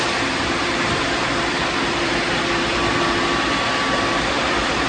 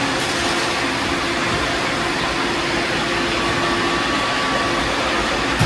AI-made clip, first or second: first